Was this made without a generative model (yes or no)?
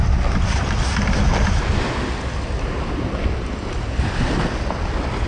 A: yes